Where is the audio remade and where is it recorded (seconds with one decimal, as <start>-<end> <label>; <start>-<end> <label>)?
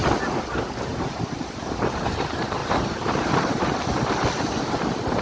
0.0-0.9 recorded; 0.9-2.0 remade; 2.0-2.6 recorded; 2.6-3.8 remade; 3.8-5.2 recorded